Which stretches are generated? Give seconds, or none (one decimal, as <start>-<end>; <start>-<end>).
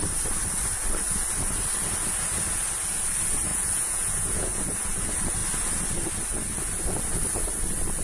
3.5-4.6